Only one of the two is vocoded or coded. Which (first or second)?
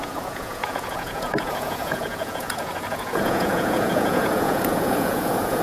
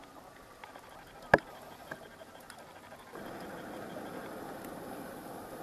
first